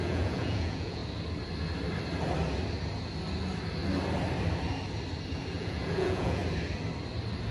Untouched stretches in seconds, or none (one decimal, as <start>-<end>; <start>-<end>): 1.0-5.5; 6.4-7.5